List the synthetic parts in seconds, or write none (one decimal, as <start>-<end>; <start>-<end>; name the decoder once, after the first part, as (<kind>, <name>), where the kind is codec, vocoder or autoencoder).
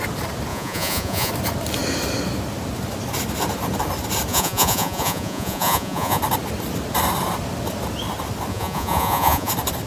0.5-1.3 (vocoder, Vocos); 4.3-6.2; 8.5-9.5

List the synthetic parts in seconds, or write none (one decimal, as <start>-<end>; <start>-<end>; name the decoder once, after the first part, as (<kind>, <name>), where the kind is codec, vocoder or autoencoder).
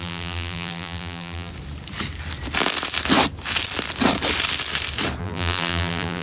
0.0-1.5 (vocoder, BigVGAN v2); 5.2-6.2